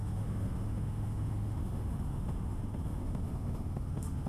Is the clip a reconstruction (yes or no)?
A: yes